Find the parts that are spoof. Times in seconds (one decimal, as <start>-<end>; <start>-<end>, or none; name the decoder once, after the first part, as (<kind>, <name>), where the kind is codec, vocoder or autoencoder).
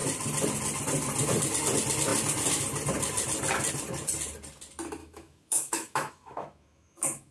5.0-7.3 (autoencoder, DAC-VAE)